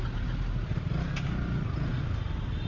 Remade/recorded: recorded